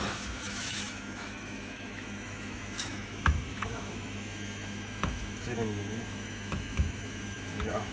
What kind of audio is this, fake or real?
fake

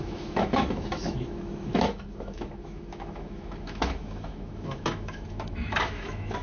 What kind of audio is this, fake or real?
fake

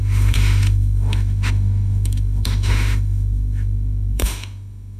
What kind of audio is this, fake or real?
fake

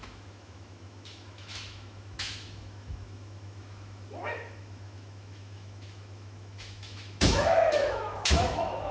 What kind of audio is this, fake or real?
fake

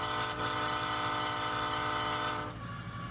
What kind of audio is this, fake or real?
real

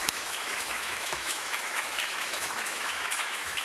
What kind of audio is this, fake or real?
fake